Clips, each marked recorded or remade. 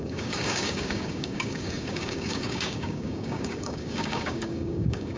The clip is remade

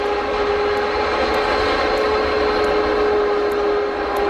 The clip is recorded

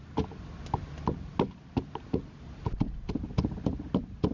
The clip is recorded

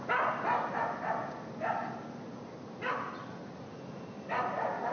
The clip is recorded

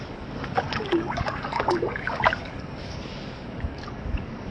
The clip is remade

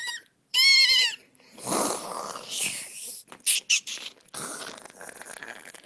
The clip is recorded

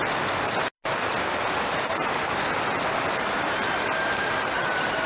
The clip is recorded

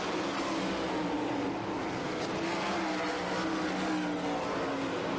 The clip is recorded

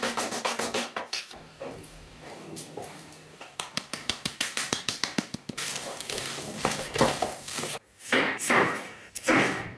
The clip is remade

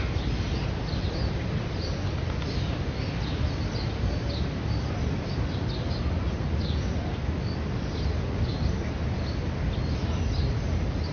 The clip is recorded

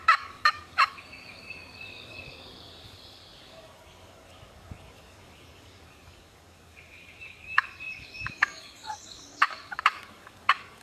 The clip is remade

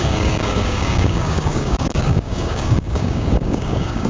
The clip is remade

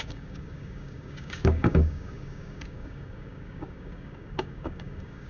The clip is remade